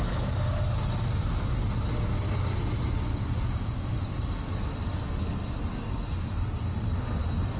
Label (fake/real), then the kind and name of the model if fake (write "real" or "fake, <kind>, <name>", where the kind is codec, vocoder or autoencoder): real